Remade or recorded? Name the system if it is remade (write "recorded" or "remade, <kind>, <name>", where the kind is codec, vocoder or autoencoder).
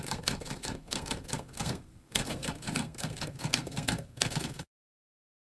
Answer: remade, codec, SNAC